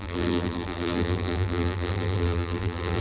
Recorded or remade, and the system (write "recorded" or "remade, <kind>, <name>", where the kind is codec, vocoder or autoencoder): remade, vocoder, BigVGAN v2